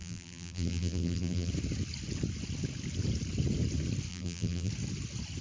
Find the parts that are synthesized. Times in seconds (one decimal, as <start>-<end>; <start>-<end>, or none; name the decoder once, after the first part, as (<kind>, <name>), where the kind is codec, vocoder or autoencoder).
0.0-1.5 (vocoder, BigVGAN v2); 4.1-4.7